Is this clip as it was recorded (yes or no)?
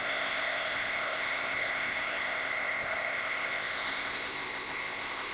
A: no